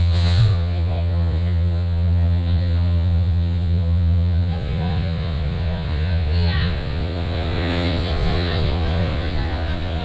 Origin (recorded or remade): remade